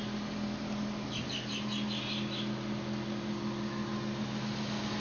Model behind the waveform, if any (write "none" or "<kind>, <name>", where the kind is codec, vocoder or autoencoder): none